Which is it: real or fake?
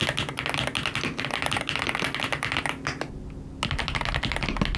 real